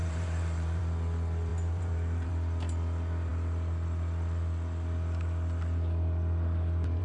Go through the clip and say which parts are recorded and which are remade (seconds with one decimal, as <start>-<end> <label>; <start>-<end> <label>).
0.0-0.8 remade; 0.8-1.5 recorded; 1.5-2.3 remade; 2.3-7.0 recorded

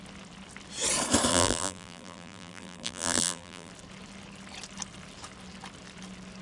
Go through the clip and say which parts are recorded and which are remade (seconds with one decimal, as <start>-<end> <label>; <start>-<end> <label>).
0.0-1.3 recorded; 1.3-3.7 remade; 3.7-6.4 recorded

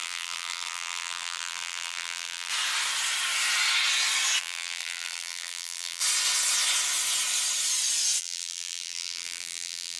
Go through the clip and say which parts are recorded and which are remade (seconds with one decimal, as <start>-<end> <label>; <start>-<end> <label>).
0.0-2.5 remade; 2.5-4.4 recorded; 4.4-6.0 remade; 6.0-8.2 recorded; 8.2-10.0 remade

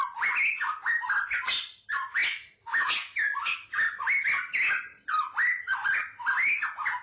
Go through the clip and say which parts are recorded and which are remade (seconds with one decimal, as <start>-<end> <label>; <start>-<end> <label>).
0.0-7.0 recorded

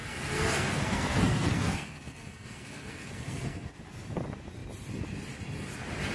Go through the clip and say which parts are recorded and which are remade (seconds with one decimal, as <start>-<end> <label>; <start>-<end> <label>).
0.0-3.7 remade; 3.7-6.1 recorded